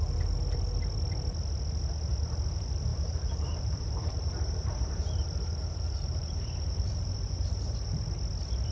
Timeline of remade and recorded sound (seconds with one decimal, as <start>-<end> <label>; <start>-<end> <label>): 0.0-2.9 recorded; 2.9-8.0 remade; 8.0-8.7 recorded